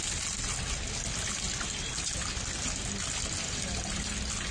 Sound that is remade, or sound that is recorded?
recorded